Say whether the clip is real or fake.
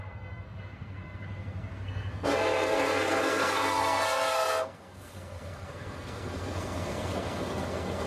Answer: fake